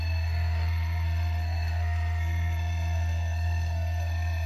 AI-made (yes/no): yes